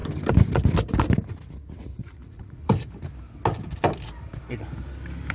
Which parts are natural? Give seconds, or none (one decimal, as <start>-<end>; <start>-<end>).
0.0-1.6; 2.7-5.3